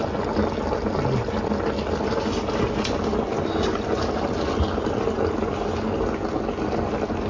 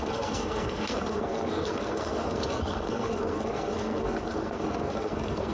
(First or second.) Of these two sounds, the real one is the first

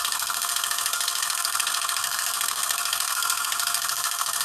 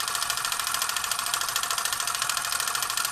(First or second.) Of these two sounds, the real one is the second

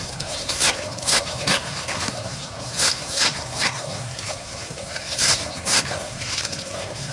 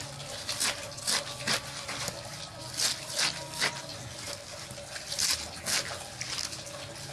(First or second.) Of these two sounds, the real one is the second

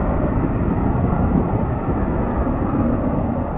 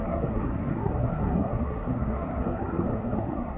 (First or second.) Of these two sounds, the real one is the first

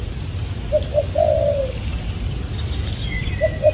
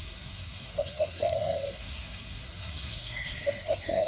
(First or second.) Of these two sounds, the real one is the first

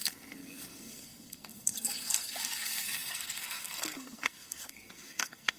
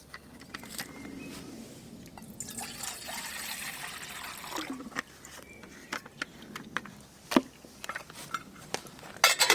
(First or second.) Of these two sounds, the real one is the second